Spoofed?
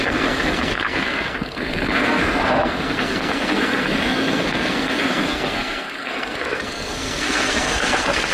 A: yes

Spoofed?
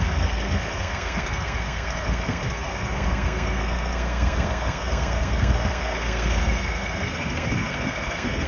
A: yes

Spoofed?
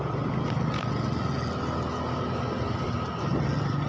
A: no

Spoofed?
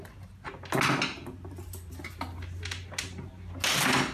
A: no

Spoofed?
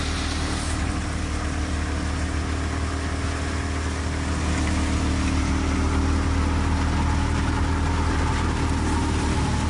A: no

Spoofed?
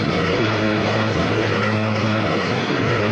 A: yes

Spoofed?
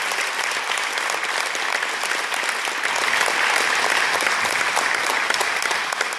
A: no